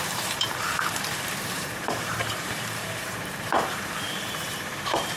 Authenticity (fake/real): fake